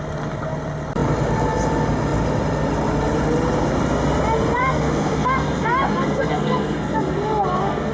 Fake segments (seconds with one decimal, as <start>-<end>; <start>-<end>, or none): 4.6-7.9